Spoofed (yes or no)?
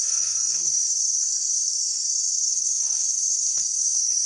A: yes